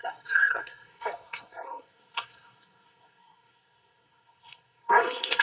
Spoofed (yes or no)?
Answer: yes